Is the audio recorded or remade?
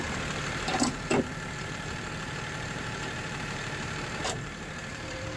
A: remade